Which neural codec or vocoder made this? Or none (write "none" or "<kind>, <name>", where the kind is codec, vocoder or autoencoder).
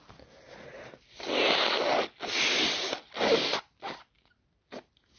none